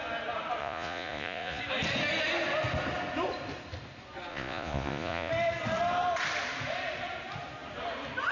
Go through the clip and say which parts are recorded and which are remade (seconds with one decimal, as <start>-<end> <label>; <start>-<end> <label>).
0.0-0.6 recorded; 0.6-1.6 remade; 1.6-4.3 recorded; 4.3-5.3 remade; 5.3-8.3 recorded